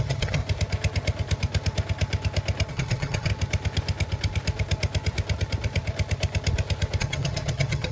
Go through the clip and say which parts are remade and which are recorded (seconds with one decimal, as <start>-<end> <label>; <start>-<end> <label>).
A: 0.0-0.4 remade; 0.4-2.7 recorded; 2.7-3.3 remade; 3.3-7.0 recorded; 7.0-7.9 remade